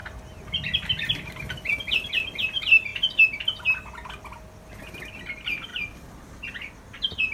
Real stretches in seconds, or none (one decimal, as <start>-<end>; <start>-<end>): 0.0-7.3